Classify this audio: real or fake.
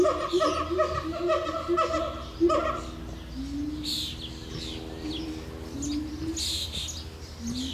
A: real